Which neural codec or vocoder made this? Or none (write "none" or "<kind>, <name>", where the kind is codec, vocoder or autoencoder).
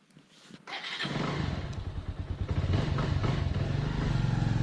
none